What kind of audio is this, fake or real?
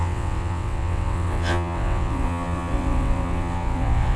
fake